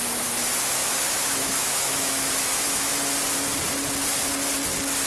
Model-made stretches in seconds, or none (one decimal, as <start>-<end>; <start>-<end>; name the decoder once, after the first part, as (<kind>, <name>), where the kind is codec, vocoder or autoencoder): 0.8-2.9 (autoencoder, DAC-VAE)